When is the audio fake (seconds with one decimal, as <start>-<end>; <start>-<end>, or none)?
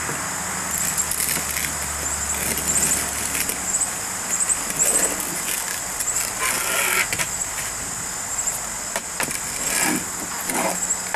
none